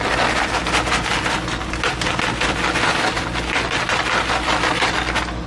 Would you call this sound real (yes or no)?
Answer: yes